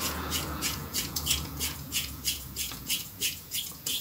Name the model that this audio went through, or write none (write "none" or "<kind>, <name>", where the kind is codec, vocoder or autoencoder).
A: vocoder, Vocos